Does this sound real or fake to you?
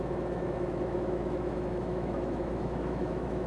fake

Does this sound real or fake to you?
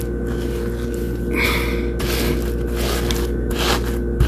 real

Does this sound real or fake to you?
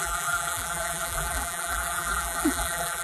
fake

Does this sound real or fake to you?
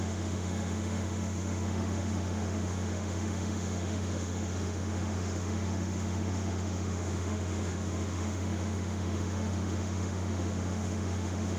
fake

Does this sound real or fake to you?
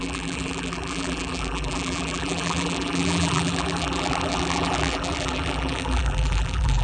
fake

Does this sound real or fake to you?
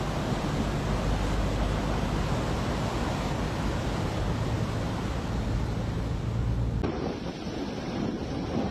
real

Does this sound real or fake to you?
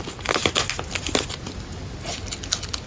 real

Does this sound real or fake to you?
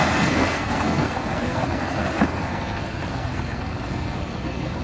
fake